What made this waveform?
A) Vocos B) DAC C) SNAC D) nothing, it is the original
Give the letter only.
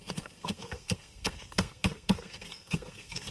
C